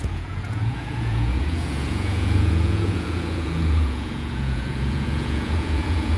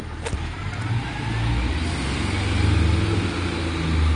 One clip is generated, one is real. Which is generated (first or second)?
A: first